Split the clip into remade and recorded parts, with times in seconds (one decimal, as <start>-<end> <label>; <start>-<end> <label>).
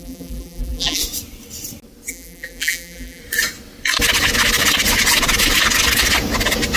0.0-1.0 remade; 1.0-2.1 recorded; 2.1-3.2 remade; 3.2-6.8 recorded